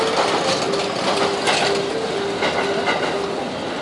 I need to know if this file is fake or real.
real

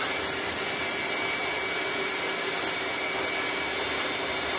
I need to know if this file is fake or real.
fake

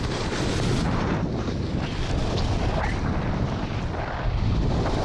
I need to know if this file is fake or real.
real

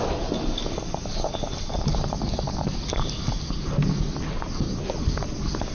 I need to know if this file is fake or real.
real